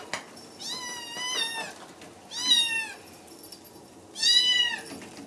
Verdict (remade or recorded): recorded